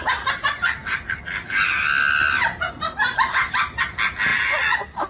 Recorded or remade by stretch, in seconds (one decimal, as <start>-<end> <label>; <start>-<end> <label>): 0.0-5.1 recorded